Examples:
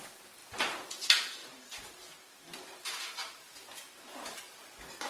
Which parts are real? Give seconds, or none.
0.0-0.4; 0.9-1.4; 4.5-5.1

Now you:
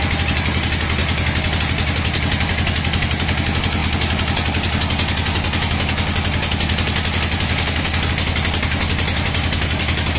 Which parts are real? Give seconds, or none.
0.0-10.2

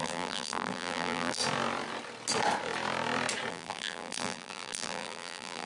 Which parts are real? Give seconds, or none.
1.4-3.5

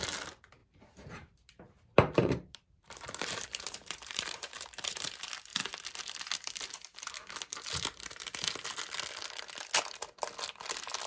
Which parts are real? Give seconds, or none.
0.0-0.6; 5.1-11.1